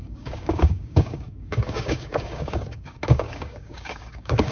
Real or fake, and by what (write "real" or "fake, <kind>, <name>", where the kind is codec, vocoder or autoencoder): fake, codec, DAC